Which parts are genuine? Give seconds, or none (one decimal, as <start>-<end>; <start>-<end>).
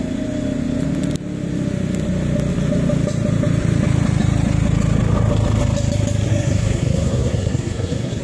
0.0-6.3